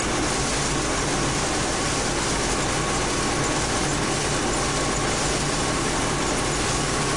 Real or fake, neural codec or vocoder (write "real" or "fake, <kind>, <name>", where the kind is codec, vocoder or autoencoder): real